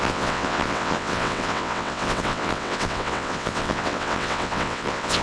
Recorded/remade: remade